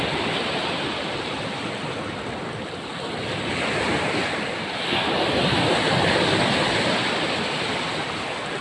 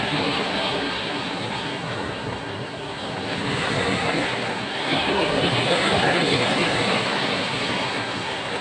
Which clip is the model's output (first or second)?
second